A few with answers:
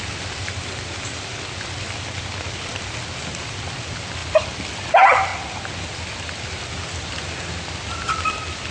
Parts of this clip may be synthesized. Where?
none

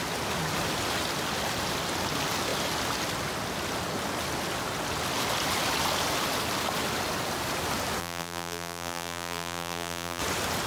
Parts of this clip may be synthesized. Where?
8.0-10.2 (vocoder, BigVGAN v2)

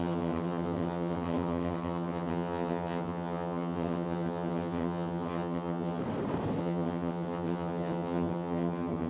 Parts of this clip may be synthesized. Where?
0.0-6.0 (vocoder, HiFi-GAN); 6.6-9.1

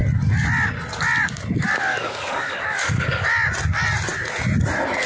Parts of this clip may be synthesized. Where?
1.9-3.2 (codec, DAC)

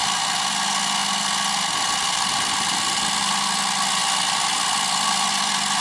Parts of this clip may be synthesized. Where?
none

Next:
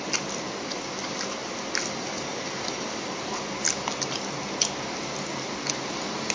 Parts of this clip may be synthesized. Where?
none

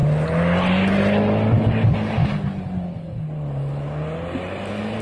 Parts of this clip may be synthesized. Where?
none